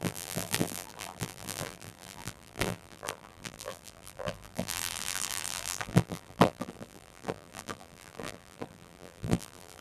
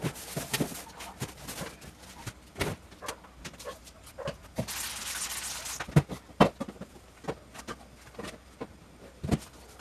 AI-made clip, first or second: first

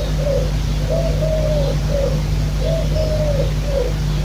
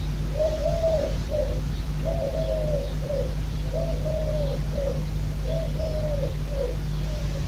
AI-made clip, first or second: second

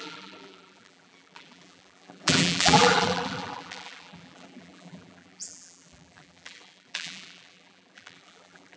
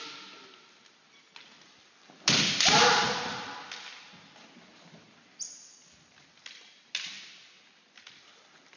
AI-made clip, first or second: first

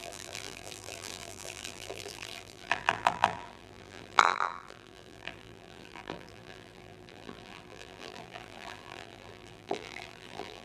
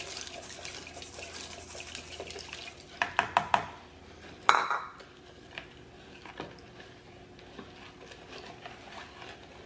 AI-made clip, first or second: first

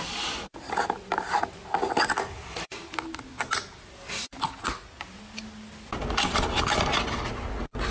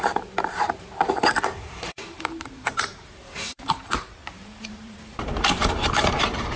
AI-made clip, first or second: second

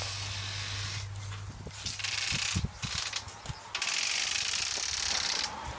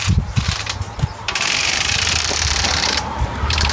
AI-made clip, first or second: second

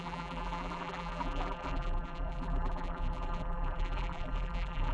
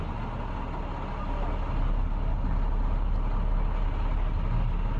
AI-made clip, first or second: first